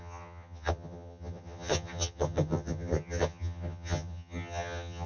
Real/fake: fake